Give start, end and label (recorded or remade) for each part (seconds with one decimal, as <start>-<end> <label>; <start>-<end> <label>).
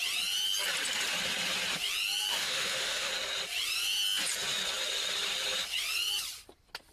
0.0-2.3 recorded; 2.3-3.1 remade; 3.1-6.9 recorded